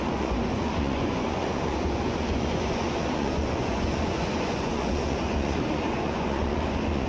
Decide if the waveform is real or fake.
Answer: fake